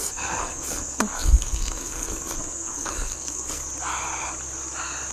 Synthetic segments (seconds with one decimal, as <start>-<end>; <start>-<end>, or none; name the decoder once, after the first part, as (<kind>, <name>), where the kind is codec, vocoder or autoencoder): 0.0-3.6 (codec, SNAC)